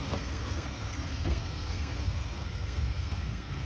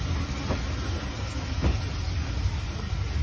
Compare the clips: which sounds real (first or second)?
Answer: second